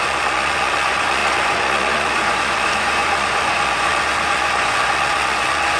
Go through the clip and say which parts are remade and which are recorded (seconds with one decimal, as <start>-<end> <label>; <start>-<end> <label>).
0.0-5.8 remade